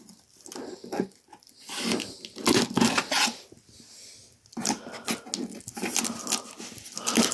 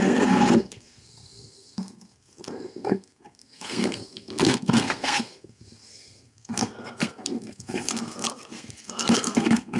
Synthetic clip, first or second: second